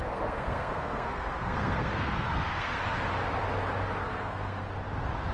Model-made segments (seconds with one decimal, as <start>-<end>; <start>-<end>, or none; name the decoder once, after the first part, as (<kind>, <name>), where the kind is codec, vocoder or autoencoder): 0.0-2.8 (codec, SNAC); 4.0-4.7